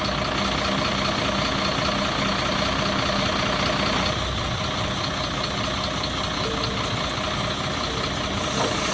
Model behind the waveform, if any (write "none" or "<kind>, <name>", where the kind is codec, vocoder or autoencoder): none